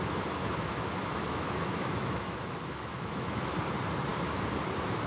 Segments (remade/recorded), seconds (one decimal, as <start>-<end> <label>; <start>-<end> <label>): 0.0-0.4 recorded; 0.4-3.5 remade; 3.5-5.1 recorded